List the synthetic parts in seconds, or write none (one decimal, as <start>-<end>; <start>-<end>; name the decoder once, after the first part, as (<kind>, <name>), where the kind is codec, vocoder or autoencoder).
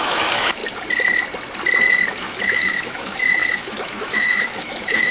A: 0.0-0.6 (autoencoder, DAC-VAE); 2.2-5.1